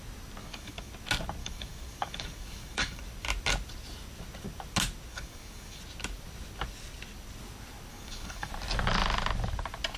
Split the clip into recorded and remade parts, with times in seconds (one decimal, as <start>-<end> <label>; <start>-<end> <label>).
0.0-0.4 recorded; 0.4-0.9 remade; 0.9-1.4 recorded; 1.4-3.0 remade; 3.0-5.1 recorded; 5.1-5.8 remade; 5.8-7.9 recorded; 7.9-8.5 remade; 8.5-10.0 recorded